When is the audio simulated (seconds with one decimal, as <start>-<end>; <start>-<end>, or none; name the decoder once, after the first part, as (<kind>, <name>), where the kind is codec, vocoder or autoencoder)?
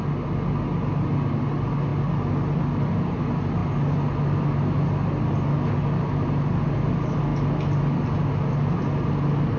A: none